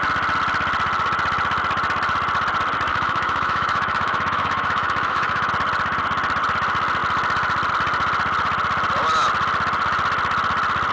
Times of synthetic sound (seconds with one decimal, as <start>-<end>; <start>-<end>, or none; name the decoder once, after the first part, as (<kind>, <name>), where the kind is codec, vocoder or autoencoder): 2.9-5.5 (autoencoder, DAC-VAE)

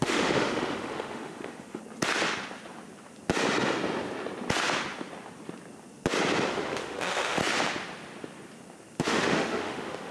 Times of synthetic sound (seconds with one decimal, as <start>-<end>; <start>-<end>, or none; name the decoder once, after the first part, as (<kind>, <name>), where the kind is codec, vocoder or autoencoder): 0.0-1.8 (autoencoder, DAC-VAE); 6.5-7.4; 9.0-10.1

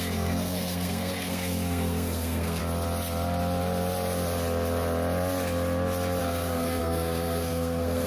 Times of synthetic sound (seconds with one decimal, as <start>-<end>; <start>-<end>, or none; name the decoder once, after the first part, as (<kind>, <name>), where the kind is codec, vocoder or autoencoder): 0.0-2.6 (codec, SNAC); 6.2-8.1

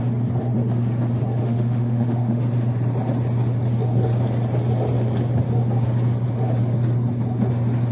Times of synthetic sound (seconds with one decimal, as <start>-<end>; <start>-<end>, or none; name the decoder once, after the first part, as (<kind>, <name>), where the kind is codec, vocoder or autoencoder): 1.4-2.4 (autoencoder, DAC-VAE)